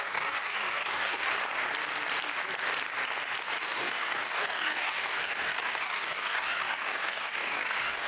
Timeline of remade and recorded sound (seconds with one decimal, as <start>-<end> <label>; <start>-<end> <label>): 0.0-1.3 remade; 1.3-3.6 recorded; 3.6-8.1 remade